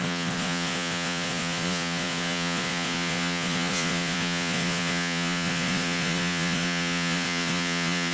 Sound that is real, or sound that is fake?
fake